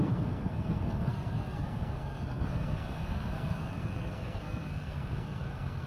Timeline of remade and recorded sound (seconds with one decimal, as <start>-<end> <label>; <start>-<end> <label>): 0.0-5.9 remade